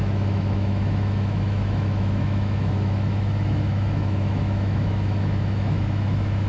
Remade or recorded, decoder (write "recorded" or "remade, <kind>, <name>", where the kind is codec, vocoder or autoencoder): remade, autoencoder, DAC-VAE